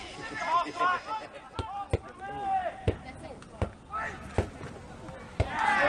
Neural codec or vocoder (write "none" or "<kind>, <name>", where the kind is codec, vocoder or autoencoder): none